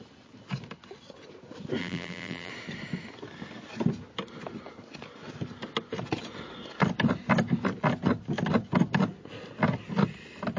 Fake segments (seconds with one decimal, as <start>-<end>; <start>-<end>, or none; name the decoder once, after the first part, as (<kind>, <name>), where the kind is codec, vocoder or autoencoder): 1.8-2.5 (vocoder, BigVGAN v2)